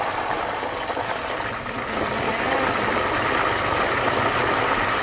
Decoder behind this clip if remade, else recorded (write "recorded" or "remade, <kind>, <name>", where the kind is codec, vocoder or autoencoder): recorded